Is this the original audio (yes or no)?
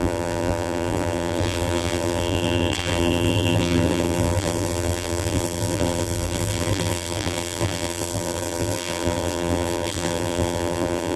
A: no